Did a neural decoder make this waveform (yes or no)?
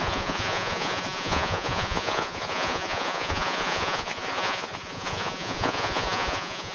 yes